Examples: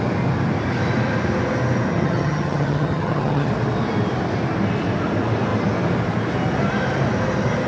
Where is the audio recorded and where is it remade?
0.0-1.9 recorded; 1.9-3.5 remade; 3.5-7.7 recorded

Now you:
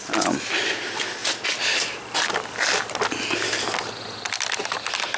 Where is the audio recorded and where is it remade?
0.0-5.2 recorded

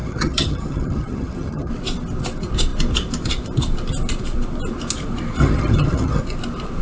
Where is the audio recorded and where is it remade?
0.0-1.7 remade; 1.7-5.4 recorded; 5.4-6.2 remade; 6.2-6.8 recorded